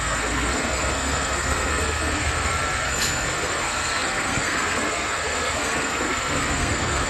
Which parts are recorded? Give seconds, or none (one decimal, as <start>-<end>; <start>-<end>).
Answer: none